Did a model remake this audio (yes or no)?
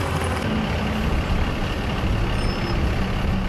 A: no